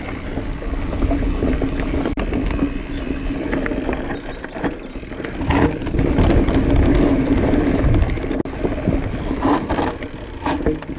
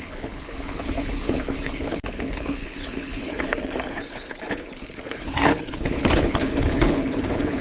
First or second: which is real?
first